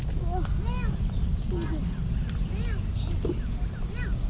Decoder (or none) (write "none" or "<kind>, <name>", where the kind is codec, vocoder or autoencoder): none